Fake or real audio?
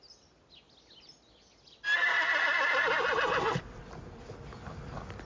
real